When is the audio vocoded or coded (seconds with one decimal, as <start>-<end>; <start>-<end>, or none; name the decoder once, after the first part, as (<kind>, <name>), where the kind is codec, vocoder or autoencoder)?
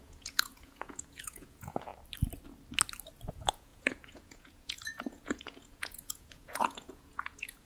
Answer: 0.0-1.9 (vocoder, Vocos); 3.3-7.7